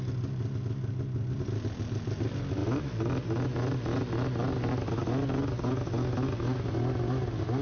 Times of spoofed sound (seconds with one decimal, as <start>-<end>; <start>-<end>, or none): none